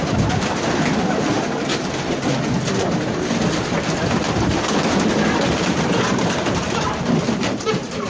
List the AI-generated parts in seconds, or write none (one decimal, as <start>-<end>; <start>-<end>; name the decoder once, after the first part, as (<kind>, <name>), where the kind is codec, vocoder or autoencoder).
6.1-8.1 (vocoder, BigVGAN v2)